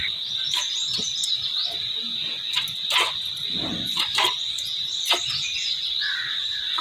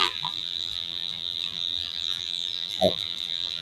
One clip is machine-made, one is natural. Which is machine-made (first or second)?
second